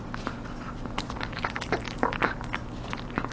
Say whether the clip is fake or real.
real